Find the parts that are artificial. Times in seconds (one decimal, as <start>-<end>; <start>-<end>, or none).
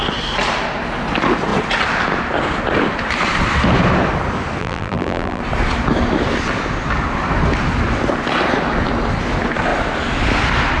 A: 4.6-5.4